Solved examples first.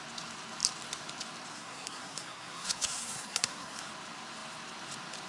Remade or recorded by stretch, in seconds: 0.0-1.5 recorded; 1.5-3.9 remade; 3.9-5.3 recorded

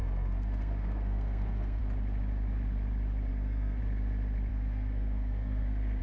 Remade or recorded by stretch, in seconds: 0.0-1.8 remade; 1.8-3.3 recorded; 3.3-3.8 remade; 3.8-4.5 recorded; 4.5-6.0 remade

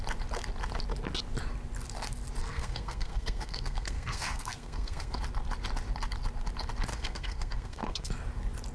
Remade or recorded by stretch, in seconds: 0.0-2.4 recorded; 2.4-5.2 remade; 5.2-6.9 recorded; 6.9-8.1 remade; 8.1-8.7 recorded

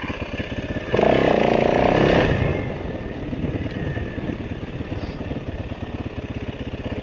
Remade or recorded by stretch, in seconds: 0.0-7.0 recorded

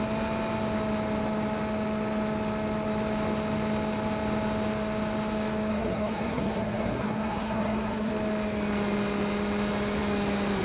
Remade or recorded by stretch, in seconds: 0.0-5.7 recorded; 5.7-8.1 remade; 8.1-10.6 recorded